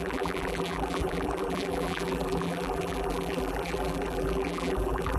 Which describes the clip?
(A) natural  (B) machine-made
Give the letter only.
B